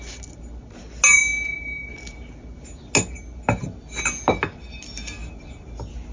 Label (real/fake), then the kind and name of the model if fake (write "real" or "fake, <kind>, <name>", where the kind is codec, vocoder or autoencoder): real